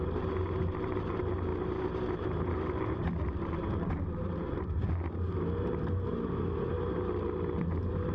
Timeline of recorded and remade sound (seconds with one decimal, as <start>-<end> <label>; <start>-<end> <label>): 0.0-4.8 remade; 4.8-5.6 recorded; 5.6-8.1 remade